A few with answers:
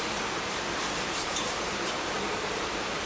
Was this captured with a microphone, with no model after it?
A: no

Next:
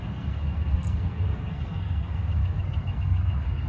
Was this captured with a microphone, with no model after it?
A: no